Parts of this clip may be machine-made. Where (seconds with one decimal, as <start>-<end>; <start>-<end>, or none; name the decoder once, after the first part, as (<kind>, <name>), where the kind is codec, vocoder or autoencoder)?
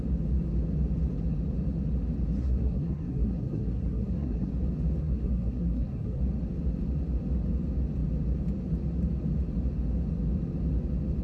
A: 2.4-4.5 (codec, SNAC); 5.0-6.2